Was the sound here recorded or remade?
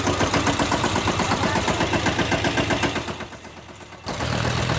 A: remade